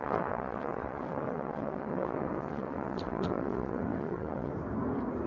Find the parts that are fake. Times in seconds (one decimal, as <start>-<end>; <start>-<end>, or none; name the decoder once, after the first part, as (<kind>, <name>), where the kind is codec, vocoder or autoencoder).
0.0-4.5 (vocoder, WaveNeXt)